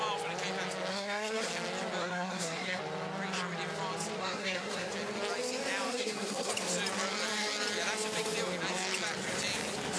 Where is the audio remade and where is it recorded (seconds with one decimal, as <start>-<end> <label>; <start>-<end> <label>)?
0.0-0.9 recorded; 0.9-1.5 remade; 1.5-2.0 recorded; 2.0-2.8 remade; 2.8-4.2 recorded; 4.2-4.9 remade; 4.9-5.9 recorded; 5.9-6.5 remade; 6.5-10.0 recorded